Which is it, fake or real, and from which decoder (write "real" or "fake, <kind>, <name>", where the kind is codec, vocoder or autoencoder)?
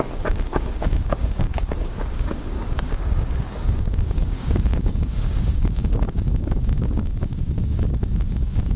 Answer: fake, codec, DAC